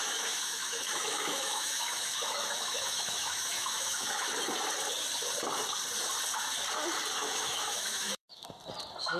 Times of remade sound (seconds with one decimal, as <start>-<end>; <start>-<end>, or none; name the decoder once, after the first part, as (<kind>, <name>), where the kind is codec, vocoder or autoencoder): 0.0-4.3 (autoencoder, DAC-VAE); 7.2-8.4